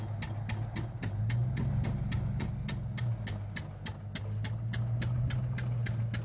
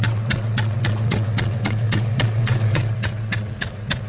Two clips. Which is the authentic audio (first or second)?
first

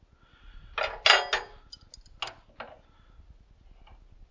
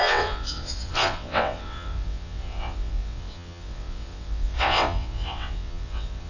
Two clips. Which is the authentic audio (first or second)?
first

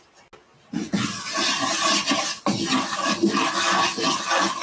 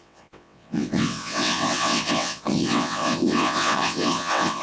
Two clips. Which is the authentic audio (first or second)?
first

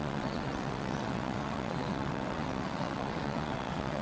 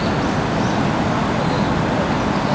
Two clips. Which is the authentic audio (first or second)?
second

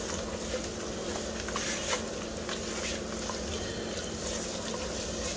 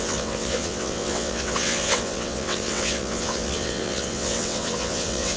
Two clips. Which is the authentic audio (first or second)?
first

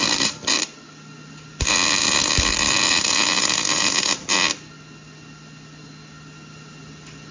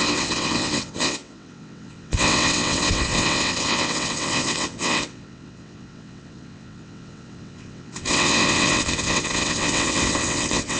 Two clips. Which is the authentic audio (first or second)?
first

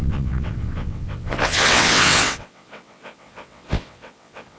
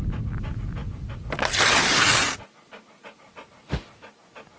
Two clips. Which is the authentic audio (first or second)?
second